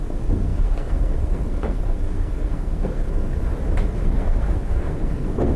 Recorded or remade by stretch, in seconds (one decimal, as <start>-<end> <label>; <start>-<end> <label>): 0.0-3.4 remade; 3.4-3.9 recorded; 3.9-5.6 remade